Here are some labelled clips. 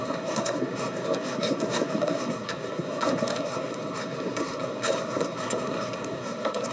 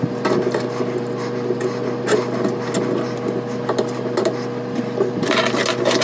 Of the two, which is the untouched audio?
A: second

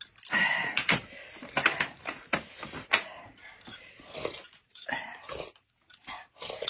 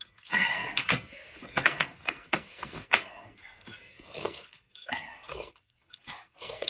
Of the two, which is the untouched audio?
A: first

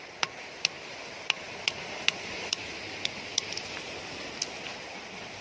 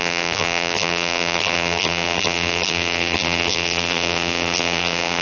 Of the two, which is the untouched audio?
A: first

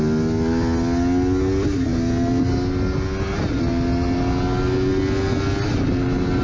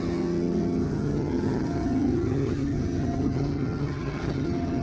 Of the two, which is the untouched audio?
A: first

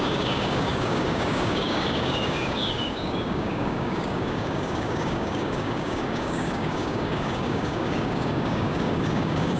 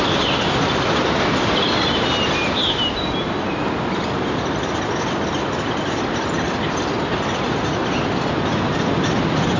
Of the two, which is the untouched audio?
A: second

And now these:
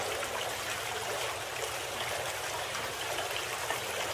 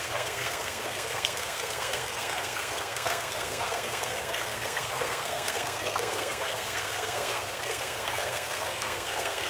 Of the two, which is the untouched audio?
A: first